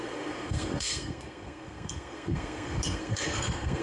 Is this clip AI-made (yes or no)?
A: yes